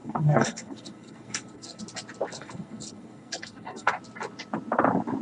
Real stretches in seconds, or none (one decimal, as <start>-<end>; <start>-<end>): 1.8-2.3; 3.9-5.2